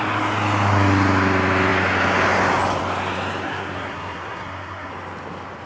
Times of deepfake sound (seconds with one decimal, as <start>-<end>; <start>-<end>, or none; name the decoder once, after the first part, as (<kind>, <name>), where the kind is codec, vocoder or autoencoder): 3.4-4.9 (codec, SNAC)